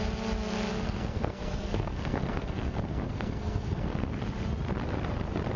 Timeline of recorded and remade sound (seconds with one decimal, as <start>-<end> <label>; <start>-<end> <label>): 0.0-0.7 recorded; 0.7-4.1 remade; 4.1-5.6 recorded